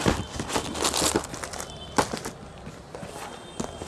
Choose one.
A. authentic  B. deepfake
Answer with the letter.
A